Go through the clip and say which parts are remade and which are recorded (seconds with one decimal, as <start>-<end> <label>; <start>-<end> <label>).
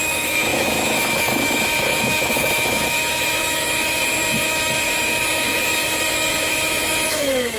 0.0-7.6 remade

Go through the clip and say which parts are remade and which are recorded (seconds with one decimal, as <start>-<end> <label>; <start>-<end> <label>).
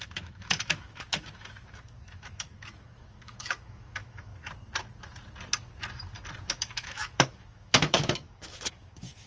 0.0-4.3 remade; 4.3-6.5 recorded; 6.5-9.3 remade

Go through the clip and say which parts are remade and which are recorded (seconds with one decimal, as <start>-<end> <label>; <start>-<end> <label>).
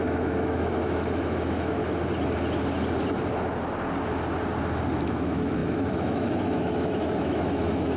0.0-1.8 remade; 1.8-5.0 recorded; 5.0-8.0 remade